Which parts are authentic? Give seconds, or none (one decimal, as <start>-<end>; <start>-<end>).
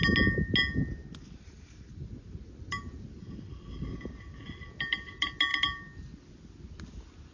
0.0-7.3